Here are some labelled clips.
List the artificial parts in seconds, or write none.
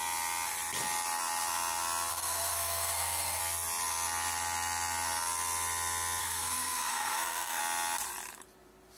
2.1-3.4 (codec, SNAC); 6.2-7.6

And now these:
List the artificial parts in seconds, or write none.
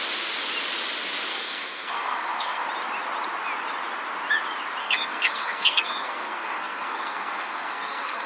1.3-2.6 (codec, SNAC); 4.8-8.3